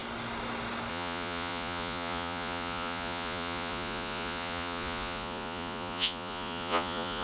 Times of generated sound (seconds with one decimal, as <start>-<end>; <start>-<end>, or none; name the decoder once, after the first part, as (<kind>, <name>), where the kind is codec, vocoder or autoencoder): 0.9-7.2 (vocoder, Vocos)